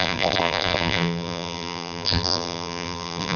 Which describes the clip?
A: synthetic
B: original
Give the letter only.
A